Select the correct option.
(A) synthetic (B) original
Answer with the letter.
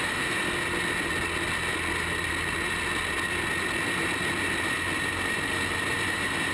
B